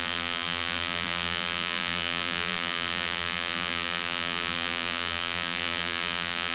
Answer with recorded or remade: remade